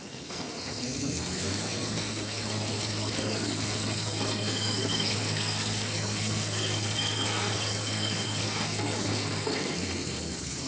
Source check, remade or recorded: remade